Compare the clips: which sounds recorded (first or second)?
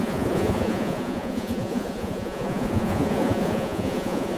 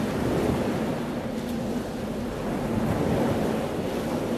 second